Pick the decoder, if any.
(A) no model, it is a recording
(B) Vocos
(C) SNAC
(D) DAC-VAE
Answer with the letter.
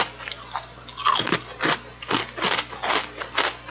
A